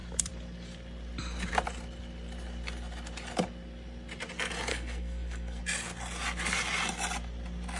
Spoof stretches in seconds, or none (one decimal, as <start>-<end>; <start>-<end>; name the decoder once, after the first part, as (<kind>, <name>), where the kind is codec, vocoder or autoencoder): 4.7-5.6 (codec, SNAC)